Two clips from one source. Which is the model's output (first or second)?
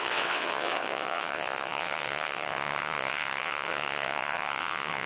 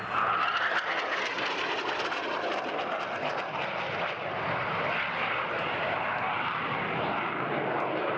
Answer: first